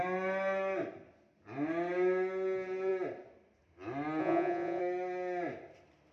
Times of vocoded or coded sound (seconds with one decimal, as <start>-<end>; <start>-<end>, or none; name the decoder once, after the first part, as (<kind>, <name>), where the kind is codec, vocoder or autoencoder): 4.2-4.8 (vocoder, Vocos)